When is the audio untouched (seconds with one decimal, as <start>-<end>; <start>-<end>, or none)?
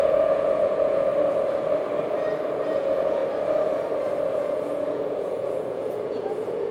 1.1-2.7; 3.2-4.3